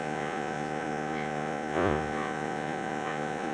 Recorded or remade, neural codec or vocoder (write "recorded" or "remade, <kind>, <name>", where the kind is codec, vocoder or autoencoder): remade, vocoder, Vocos